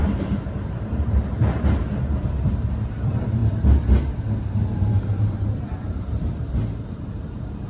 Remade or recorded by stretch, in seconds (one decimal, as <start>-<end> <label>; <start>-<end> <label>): 0.0-3.4 remade; 3.4-4.8 recorded; 4.8-7.7 remade